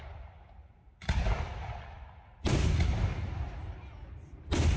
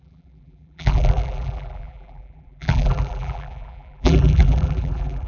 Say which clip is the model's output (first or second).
second